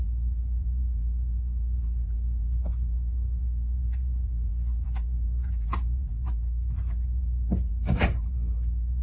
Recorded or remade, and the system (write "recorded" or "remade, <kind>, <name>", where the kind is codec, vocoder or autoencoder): remade, vocoder, BigVGAN v2